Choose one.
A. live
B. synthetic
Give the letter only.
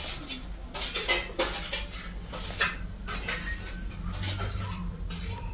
A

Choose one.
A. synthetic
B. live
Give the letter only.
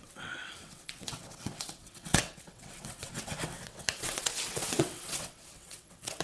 A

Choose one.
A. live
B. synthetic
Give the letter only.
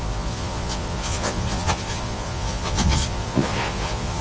B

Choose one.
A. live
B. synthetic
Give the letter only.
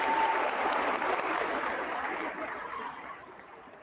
B